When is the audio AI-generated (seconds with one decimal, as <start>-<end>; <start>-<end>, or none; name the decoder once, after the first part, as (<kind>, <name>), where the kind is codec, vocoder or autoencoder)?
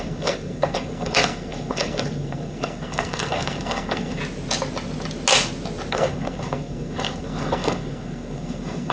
0.0-4.2 (codec, SNAC); 5.9-8.9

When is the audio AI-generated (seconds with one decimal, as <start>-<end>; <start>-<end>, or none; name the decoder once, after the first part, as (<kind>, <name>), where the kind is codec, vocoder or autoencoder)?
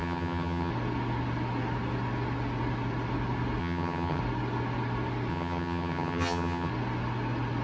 0.0-0.7 (vocoder, HiFi-GAN); 3.6-4.2; 5.3-6.7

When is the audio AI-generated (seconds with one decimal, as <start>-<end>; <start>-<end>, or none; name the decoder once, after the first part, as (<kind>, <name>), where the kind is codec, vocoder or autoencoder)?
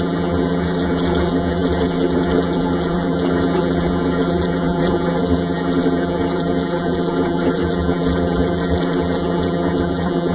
0.0-10.3 (vocoder, BigVGAN v2)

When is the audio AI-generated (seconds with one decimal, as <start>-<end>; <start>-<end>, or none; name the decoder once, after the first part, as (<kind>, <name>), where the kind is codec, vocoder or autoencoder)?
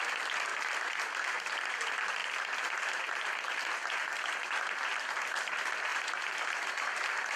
none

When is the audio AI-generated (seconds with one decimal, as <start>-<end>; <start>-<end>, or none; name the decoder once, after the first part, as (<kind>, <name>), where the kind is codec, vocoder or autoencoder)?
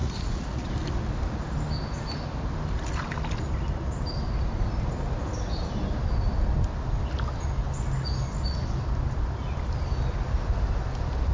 0.0-0.7 (vocoder, Vocos)